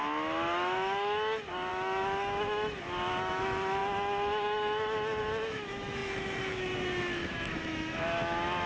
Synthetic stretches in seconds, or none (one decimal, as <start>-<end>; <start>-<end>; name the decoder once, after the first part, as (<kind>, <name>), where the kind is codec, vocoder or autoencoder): 0.0-8.7 (autoencoder, DAC-VAE)